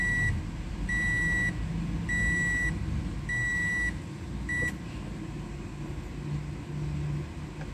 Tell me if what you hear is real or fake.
real